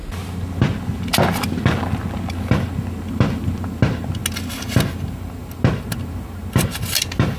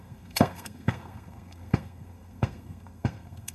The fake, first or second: second